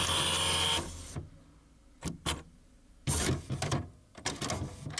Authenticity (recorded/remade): recorded